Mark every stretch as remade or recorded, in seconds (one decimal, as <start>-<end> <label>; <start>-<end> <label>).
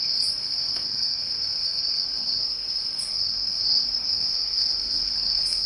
0.0-0.4 recorded; 0.4-3.6 remade; 3.6-4.1 recorded; 4.1-5.7 remade